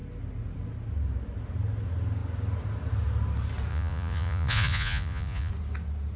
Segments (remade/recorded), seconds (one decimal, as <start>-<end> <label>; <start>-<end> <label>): 0.0-3.7 recorded; 3.7-5.5 remade; 5.5-6.2 recorded